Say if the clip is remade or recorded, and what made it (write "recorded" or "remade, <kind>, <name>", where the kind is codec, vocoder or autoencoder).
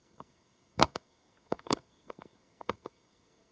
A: remade, codec, SNAC